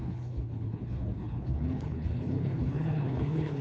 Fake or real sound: fake